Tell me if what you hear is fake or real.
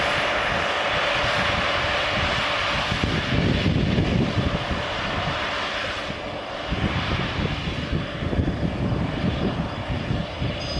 fake